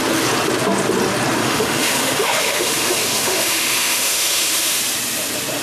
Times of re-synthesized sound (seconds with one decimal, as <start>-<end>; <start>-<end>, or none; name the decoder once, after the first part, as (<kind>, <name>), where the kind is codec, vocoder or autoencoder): 1.4-4.8 (autoencoder, DAC-VAE)